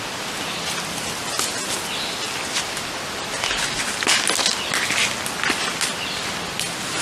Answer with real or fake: real